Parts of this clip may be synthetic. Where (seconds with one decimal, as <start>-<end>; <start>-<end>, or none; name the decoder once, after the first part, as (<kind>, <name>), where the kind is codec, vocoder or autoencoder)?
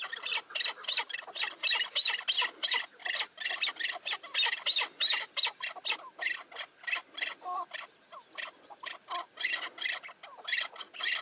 none